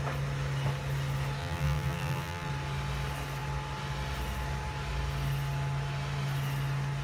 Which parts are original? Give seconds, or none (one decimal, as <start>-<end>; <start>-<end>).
0.0-1.4; 2.5-7.0